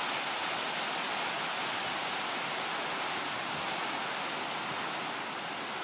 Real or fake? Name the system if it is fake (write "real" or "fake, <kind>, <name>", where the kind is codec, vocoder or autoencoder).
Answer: real